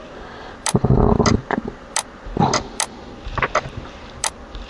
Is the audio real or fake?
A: real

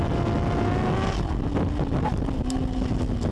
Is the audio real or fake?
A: real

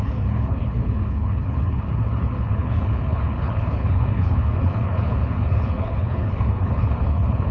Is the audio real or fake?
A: fake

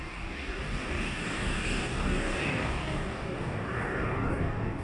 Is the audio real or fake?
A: fake